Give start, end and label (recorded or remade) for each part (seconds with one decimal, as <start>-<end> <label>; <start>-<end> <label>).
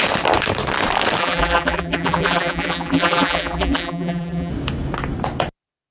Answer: 0.0-1.2 recorded; 1.2-4.5 remade; 4.5-5.9 recorded